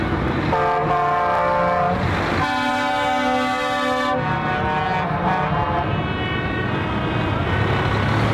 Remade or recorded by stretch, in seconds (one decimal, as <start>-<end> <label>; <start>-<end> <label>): 0.0-8.3 recorded